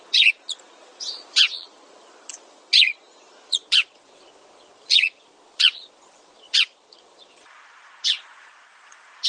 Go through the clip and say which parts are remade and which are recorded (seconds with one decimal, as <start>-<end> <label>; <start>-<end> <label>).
0.0-9.3 remade